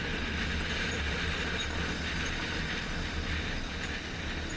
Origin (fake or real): real